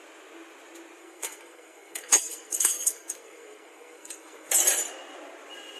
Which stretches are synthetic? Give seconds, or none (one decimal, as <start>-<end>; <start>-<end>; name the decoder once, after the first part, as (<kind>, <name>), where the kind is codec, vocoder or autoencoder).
1.0-4.5 (codec, SNAC)

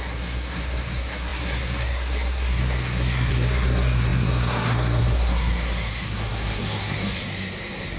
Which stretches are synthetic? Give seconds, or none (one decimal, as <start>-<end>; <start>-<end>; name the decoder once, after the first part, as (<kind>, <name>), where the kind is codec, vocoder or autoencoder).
0.0-8.0 (codec, SNAC)

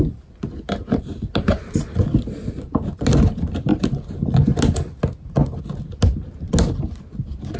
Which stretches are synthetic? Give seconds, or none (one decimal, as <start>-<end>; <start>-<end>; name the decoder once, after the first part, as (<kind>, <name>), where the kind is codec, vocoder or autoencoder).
none

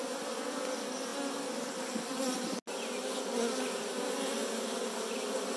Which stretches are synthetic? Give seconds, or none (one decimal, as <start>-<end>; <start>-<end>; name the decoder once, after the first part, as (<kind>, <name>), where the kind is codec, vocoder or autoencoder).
none

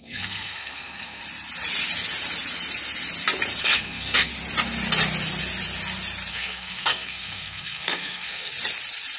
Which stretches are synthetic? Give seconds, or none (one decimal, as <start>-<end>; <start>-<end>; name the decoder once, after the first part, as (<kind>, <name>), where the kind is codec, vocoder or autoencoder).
0.0-1.2 (codec, SNAC); 3.6-4.3; 6.3-8.5

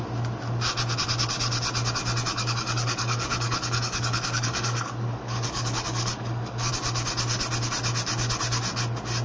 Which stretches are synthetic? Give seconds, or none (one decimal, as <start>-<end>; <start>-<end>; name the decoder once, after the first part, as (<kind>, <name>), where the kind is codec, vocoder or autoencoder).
2.3-6.7 (codec, DAC)

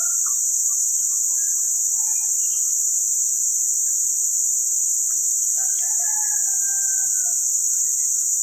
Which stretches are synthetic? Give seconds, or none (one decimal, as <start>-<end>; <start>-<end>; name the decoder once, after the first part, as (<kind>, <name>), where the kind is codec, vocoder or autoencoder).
none